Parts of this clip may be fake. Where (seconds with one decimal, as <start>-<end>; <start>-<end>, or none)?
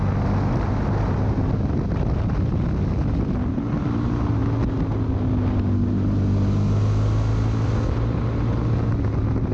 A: none